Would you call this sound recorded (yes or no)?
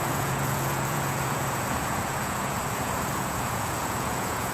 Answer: no